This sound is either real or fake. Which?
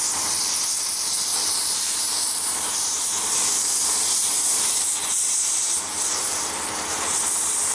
fake